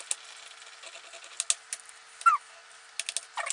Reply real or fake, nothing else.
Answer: real